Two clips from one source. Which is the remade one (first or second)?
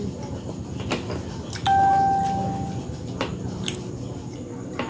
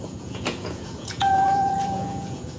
second